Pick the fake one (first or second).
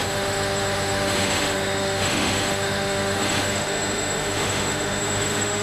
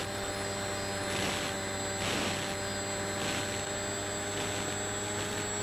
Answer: first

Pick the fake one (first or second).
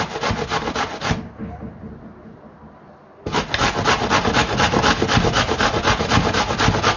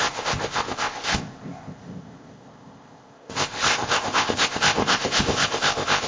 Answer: second